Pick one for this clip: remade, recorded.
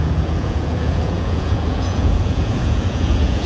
remade